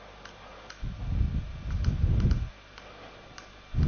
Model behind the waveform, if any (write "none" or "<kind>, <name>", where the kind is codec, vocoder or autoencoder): none